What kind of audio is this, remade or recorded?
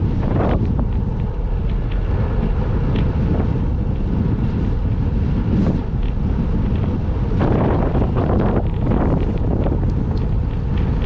recorded